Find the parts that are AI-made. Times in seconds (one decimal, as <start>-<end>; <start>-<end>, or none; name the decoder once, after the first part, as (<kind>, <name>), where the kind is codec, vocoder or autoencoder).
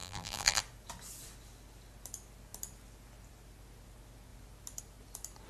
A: 0.0-0.6 (vocoder, BigVGAN v2)